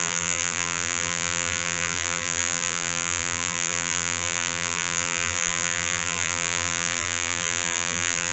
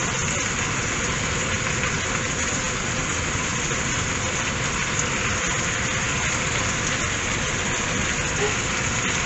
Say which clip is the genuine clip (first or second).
second